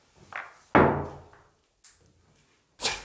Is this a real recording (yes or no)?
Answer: yes